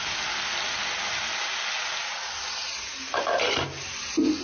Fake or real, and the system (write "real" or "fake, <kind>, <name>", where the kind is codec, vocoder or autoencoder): real